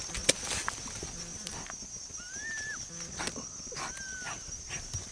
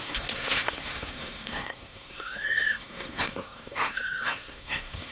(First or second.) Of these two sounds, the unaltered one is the first